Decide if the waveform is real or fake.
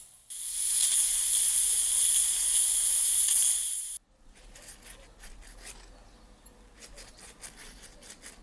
real